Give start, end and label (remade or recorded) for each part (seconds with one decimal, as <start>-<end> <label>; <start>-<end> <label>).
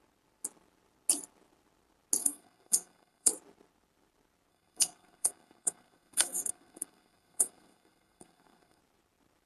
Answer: 0.0-2.2 recorded; 2.2-3.3 remade; 3.3-4.5 recorded; 4.5-8.8 remade; 8.8-9.5 recorded